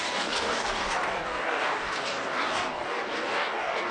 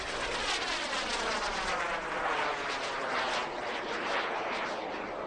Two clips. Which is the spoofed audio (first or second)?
first